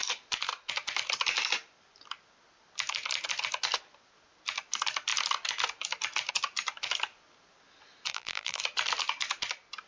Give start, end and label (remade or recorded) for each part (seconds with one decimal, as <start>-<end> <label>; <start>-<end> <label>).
0.0-8.1 recorded; 8.1-8.6 remade; 8.6-9.9 recorded